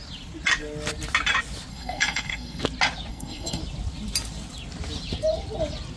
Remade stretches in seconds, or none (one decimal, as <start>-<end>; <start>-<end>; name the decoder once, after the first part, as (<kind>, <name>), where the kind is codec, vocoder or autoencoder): 1.7-2.6 (codec, SNAC); 3.1-3.6